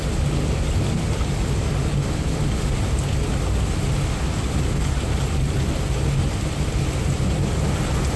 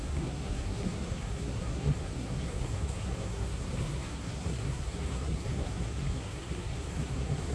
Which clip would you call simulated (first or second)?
second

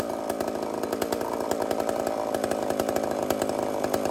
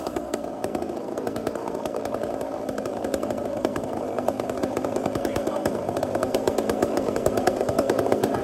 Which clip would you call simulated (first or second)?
second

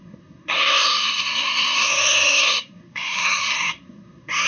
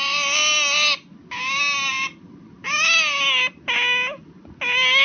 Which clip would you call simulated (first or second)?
first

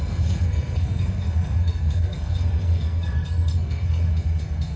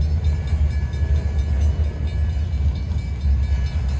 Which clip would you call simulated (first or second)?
first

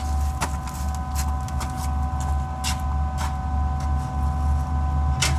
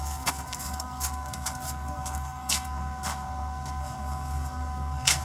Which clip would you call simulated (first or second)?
second